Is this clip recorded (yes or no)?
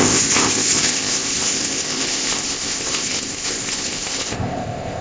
no